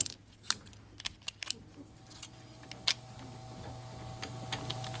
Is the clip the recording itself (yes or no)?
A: yes